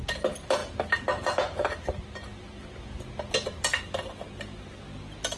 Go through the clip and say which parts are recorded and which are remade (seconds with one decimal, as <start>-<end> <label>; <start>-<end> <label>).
0.0-5.4 recorded

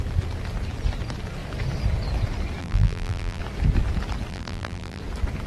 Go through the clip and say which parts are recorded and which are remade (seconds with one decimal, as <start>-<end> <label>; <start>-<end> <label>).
0.0-2.6 recorded; 2.6-3.4 remade; 3.4-4.3 recorded; 4.3-5.0 remade; 5.0-5.5 recorded

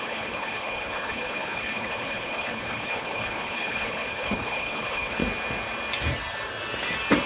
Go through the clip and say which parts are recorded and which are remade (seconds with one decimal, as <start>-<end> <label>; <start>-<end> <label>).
0.0-5.2 remade; 5.2-7.3 recorded

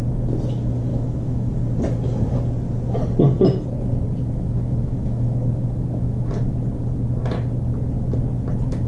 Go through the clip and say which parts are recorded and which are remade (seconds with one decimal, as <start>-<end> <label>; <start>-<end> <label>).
0.0-0.9 recorded; 0.9-1.5 remade; 1.5-4.2 recorded; 4.2-6.3 remade; 6.3-8.9 recorded

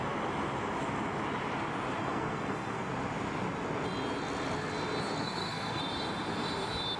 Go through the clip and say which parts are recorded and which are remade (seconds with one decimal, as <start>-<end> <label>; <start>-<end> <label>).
0.0-2.0 recorded; 2.0-2.9 remade; 2.9-5.2 recorded; 5.2-5.8 remade; 5.8-7.0 recorded

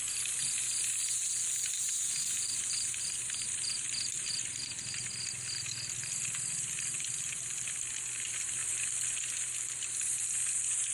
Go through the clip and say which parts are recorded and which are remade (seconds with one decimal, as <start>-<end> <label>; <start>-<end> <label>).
0.0-10.9 recorded